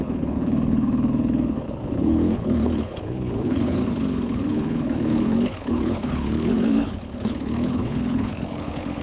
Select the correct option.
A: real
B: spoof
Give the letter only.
B